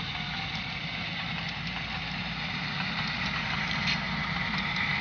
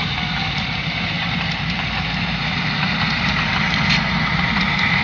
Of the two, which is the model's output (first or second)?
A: second